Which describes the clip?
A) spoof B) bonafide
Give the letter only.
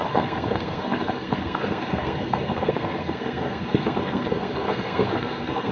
A